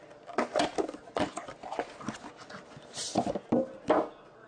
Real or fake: real